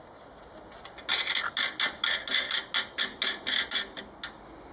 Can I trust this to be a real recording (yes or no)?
yes